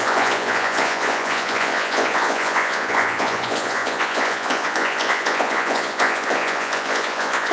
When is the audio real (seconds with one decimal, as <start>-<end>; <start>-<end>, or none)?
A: none